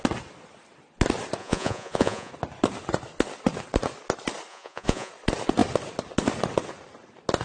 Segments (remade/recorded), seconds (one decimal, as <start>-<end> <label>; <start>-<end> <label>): 0.0-1.4 recorded; 1.4-2.3 remade; 2.3-4.5 recorded; 4.5-5.1 remade; 5.1-7.4 recorded